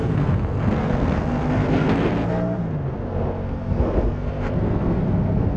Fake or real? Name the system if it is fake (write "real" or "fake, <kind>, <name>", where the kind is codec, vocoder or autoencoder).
fake, codec, SNAC